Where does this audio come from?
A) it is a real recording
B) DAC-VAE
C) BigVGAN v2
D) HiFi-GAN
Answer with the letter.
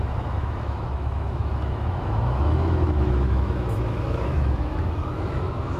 B